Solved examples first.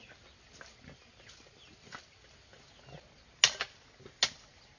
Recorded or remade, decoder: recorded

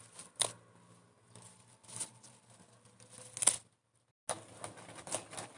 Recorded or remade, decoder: recorded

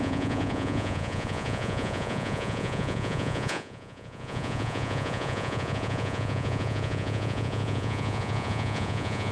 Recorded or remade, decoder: remade, vocoder, Vocos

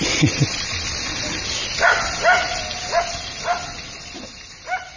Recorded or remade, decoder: recorded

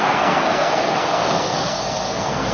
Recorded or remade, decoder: remade, codec, SNAC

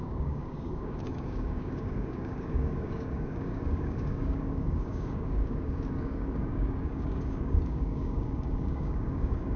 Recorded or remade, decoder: remade, codec, DAC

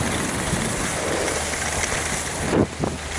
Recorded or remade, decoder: recorded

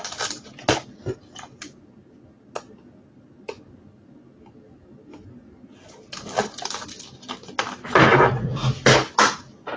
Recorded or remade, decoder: recorded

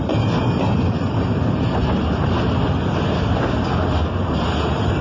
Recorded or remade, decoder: recorded